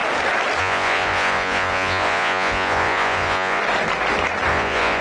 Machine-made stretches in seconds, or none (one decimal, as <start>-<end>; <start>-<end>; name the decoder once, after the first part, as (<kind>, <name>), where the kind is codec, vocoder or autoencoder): 0.6-3.6 (vocoder, Vocos); 4.5-5.0